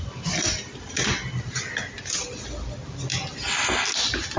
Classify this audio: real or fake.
real